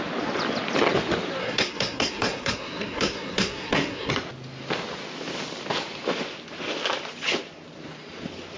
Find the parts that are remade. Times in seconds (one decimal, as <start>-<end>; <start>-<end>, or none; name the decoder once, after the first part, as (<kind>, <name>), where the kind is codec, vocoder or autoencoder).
1.4-4.1 (codec, SNAC)

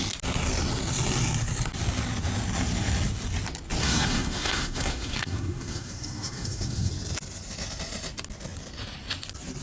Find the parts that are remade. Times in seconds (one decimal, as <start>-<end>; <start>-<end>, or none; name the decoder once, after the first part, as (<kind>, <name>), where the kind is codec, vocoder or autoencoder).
3.8-6.9 (codec, SNAC)

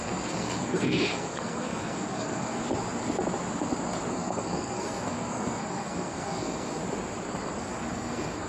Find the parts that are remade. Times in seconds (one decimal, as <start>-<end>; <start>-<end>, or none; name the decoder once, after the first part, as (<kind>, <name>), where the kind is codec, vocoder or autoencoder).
0.0-2.6 (codec, SNAC); 4.1-6.8; 7.6-8.5

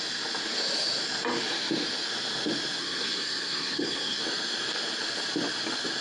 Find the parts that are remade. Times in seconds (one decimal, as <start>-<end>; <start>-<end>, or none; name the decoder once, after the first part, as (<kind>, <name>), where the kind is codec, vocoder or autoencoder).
2.8-4.2 (codec, SNAC)

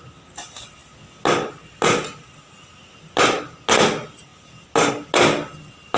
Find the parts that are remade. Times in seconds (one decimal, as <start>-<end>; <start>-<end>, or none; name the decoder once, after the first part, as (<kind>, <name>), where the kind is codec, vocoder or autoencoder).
none

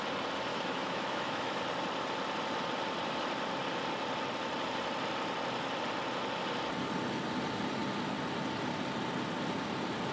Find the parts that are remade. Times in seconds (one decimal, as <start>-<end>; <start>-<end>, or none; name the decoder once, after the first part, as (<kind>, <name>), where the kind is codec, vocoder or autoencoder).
0.5-1.6 (autoencoder, DAC-VAE)

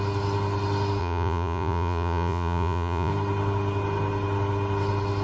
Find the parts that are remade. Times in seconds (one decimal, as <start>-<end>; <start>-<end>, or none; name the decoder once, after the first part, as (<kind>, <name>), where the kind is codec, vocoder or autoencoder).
1.0-3.1 (vocoder, Vocos)